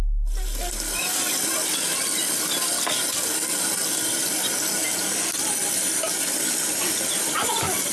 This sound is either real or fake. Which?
real